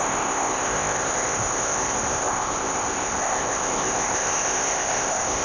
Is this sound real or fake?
fake